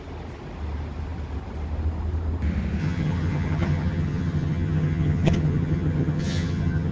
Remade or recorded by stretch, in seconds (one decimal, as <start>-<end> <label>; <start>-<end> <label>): 0.0-2.8 recorded; 2.8-6.9 remade